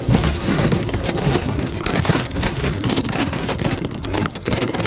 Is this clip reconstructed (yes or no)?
yes